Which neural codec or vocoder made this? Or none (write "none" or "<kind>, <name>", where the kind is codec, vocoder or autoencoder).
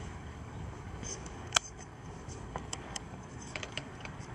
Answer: codec, DAC